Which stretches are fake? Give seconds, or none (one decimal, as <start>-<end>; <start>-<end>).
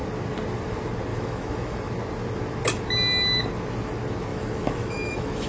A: 1.1-1.9; 4.3-5.5